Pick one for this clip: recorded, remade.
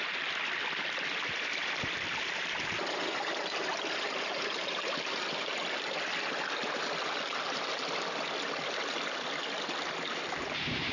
recorded